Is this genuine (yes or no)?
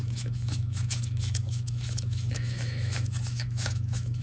no